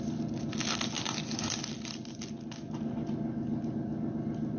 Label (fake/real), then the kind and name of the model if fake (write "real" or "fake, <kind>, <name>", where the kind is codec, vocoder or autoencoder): real